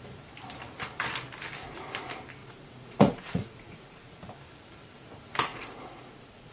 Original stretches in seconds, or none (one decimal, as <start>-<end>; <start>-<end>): 0.0-2.4; 4.1-5.5